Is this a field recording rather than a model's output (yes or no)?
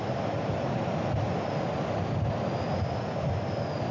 yes